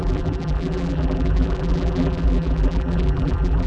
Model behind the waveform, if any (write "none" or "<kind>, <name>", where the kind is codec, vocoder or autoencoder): vocoder, BigVGAN v2